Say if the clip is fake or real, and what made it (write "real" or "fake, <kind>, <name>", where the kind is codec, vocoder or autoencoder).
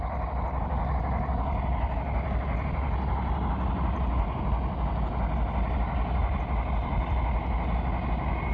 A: real